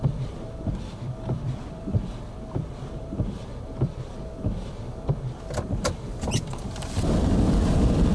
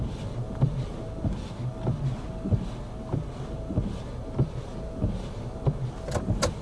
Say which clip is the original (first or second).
second